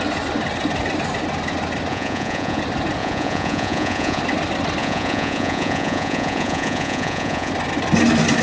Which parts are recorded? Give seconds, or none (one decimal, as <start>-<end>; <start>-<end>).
0.0-1.9; 2.6-3.0; 4.2-4.8; 7.5-8.4

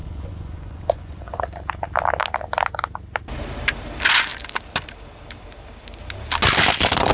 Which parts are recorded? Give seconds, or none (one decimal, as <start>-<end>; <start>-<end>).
1.4-7.1

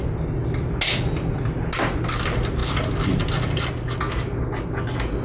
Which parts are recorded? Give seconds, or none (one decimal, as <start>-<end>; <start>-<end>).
0.0-5.2

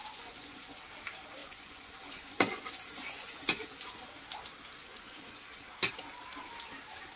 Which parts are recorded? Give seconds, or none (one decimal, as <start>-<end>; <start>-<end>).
0.8-1.4; 4.0-4.8; 5.5-7.2